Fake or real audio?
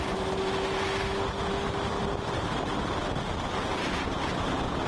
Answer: real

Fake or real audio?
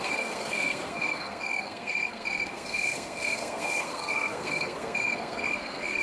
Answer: fake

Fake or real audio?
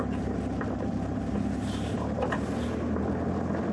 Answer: fake